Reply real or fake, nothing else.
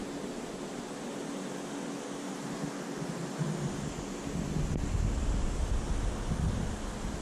real